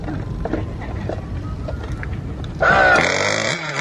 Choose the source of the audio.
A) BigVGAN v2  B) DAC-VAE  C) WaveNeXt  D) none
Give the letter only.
D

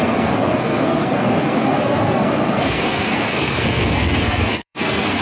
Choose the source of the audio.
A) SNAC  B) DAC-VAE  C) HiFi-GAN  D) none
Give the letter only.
A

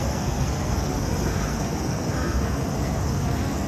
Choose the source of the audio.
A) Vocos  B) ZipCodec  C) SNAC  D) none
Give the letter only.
C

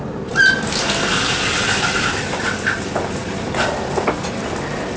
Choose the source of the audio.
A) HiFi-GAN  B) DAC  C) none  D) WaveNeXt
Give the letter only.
C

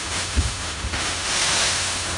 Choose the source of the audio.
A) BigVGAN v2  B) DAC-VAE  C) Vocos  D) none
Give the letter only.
B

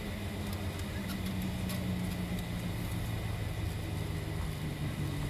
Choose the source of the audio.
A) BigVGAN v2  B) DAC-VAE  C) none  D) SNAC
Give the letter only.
C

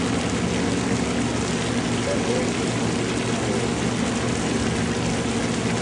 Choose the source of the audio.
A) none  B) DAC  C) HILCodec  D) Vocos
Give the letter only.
A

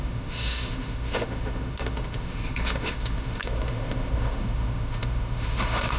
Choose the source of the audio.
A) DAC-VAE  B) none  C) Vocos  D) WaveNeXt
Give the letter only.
A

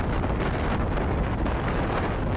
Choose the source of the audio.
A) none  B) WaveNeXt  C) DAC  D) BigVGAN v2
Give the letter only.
A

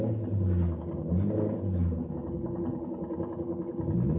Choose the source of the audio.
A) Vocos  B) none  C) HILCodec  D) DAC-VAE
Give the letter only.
B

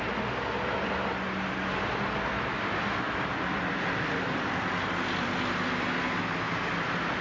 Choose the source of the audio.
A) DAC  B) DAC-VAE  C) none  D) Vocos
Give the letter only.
C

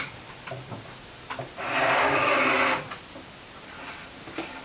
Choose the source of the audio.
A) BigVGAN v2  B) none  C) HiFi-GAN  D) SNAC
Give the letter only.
B